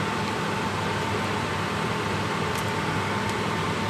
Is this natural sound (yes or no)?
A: yes